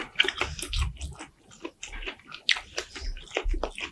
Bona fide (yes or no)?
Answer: yes